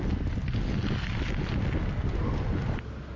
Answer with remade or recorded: recorded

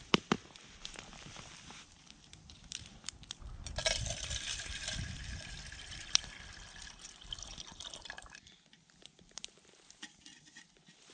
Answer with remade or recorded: remade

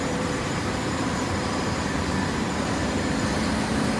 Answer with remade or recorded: remade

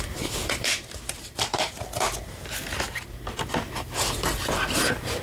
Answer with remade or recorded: remade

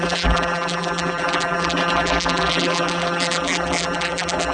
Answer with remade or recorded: remade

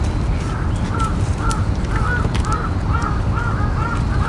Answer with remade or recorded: recorded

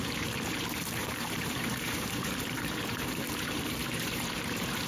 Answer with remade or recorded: remade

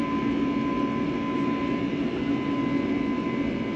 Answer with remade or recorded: recorded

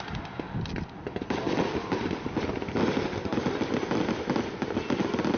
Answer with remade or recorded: recorded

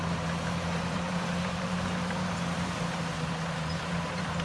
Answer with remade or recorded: remade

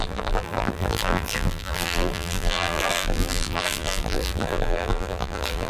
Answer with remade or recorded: remade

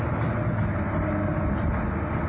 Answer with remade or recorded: recorded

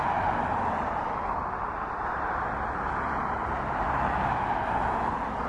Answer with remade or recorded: recorded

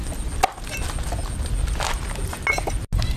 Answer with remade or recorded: recorded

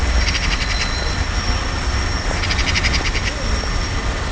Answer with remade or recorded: recorded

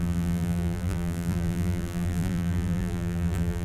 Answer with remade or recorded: remade